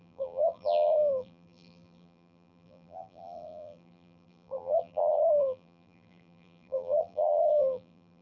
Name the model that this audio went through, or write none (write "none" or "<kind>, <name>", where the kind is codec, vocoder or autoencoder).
vocoder, BigVGAN v2